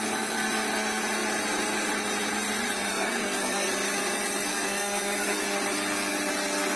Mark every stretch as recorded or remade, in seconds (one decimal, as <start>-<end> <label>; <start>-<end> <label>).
0.0-2.9 recorded; 2.9-3.7 remade; 3.7-4.5 recorded; 4.5-5.4 remade; 5.4-6.8 recorded